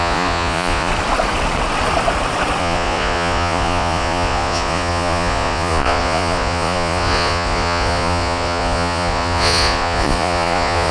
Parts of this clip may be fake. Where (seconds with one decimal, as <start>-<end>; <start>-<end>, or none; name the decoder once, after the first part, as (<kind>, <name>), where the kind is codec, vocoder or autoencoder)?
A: 0.0-0.9 (vocoder, Vocos); 2.6-10.9